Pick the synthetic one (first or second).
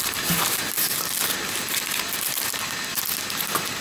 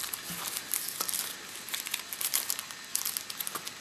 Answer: first